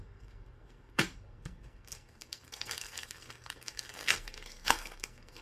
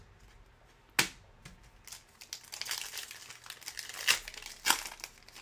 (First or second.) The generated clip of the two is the first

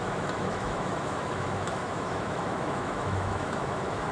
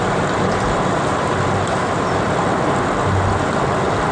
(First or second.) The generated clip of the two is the first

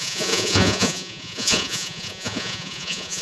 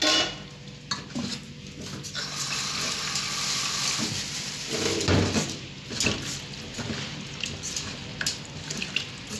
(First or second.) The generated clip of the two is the first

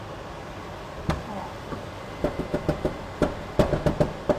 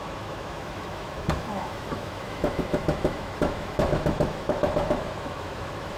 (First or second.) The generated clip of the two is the second